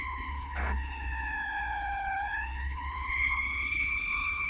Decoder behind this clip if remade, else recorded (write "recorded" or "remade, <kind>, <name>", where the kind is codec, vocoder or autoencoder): remade, codec, HILCodec